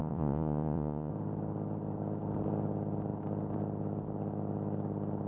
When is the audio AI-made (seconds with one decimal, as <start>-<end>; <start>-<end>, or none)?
0.0-1.1